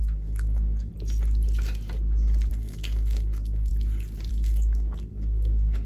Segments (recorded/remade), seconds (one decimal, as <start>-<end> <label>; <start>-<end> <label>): 0.0-0.9 remade; 0.9-2.5 recorded; 2.5-3.7 remade; 3.7-4.3 recorded; 4.3-5.9 remade

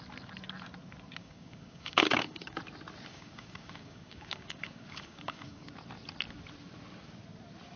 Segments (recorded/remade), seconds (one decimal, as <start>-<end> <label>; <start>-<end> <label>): 0.0-1.2 recorded; 1.2-2.6 remade; 2.6-3.1 recorded; 3.1-5.7 remade; 5.7-7.8 recorded

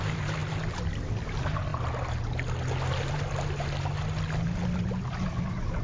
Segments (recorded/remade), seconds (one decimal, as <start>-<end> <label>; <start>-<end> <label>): 0.0-5.8 recorded